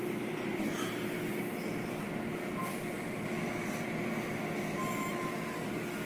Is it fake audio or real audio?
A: real